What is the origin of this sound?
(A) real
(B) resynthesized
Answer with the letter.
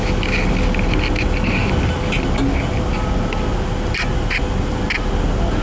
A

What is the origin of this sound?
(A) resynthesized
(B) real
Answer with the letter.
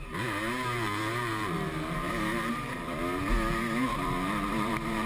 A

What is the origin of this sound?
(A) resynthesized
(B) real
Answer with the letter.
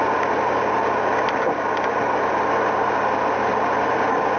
B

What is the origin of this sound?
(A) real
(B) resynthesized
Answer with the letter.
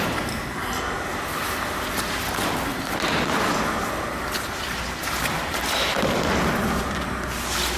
A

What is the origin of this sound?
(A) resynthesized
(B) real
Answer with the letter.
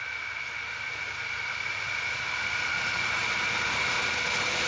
A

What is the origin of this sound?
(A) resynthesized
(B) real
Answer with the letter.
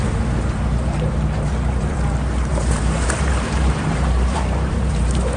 A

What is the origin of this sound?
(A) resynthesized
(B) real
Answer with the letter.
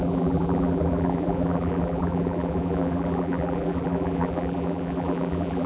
A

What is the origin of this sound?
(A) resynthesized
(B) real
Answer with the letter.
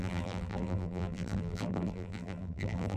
A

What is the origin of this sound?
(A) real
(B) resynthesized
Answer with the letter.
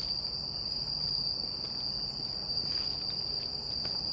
B